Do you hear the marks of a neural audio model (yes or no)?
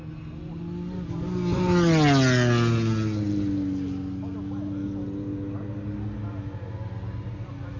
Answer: no